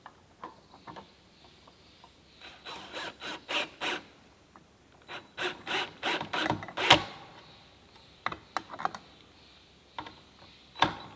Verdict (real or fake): real